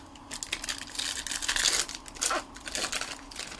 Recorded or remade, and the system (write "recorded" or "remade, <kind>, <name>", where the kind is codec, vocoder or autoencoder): recorded